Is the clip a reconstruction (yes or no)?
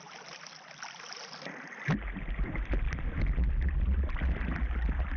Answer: no